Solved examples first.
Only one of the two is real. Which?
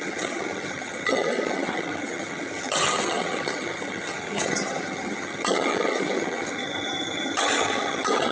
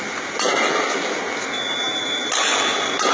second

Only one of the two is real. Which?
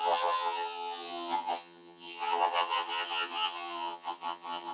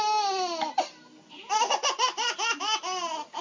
second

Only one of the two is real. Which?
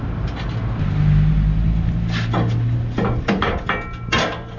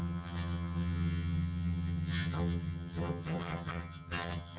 first